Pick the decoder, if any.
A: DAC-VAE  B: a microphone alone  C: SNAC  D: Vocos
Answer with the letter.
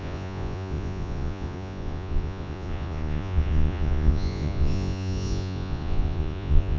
D